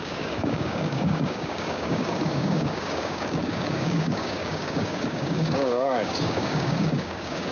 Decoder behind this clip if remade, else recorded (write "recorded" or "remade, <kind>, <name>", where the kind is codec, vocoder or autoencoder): remade, codec, DAC